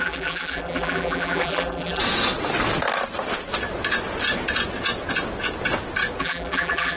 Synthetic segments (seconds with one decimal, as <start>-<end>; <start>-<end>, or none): 0.0-2.0; 6.2-7.0